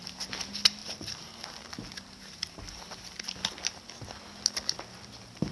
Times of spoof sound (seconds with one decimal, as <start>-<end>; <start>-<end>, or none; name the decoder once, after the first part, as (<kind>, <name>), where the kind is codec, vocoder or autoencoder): none